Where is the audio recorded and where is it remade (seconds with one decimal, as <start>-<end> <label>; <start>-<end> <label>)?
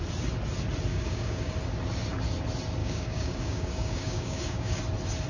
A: 0.0-0.9 recorded; 0.9-1.5 remade; 1.5-2.8 recorded; 2.8-4.8 remade; 4.8-5.3 recorded